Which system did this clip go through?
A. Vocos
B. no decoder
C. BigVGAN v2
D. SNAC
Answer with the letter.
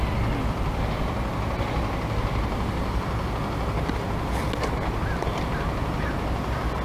B